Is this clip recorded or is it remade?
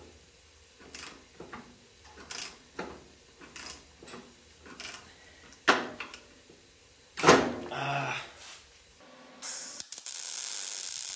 recorded